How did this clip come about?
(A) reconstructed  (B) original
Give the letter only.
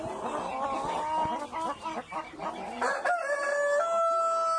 B